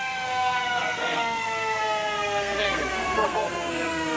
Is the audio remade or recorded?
remade